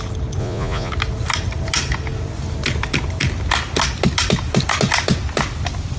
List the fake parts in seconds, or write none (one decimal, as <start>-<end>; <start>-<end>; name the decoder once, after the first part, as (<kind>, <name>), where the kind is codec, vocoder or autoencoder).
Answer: 0.4-0.9 (vocoder, Vocos)